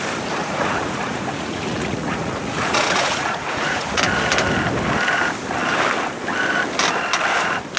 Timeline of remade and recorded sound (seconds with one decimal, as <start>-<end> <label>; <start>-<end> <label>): 0.0-0.4 recorded; 0.4-4.0 remade; 4.0-7.8 recorded